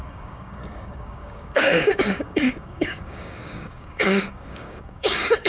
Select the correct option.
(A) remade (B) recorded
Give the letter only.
A